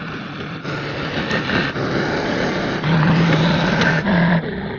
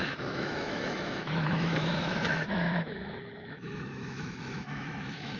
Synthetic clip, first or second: second